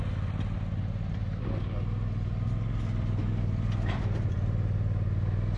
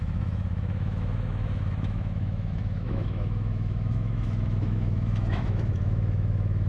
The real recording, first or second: first